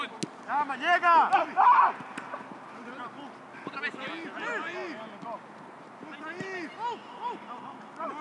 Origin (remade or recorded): recorded